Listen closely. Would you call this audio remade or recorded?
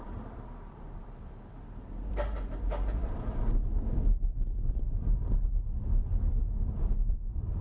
remade